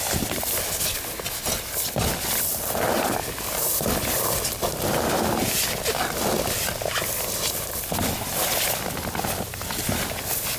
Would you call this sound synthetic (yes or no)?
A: no